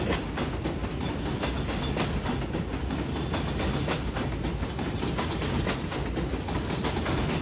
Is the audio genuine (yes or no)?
yes